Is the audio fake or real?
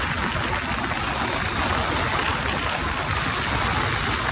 real